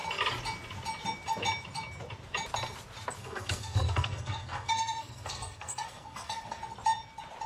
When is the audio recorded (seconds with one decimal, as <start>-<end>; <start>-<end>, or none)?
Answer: 0.0-3.2; 6.6-7.5